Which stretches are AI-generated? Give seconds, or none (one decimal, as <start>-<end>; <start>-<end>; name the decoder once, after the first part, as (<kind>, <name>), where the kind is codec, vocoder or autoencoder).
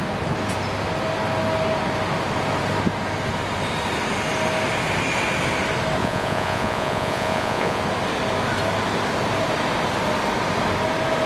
6.0-7.8 (vocoder, Vocos)